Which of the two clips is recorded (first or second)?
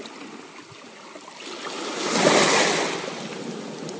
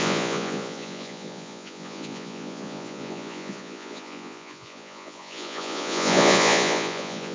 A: first